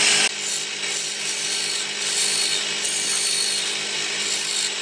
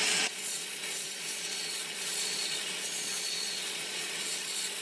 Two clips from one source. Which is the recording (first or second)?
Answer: first